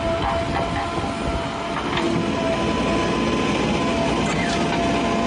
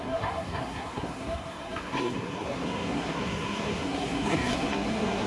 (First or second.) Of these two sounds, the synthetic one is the second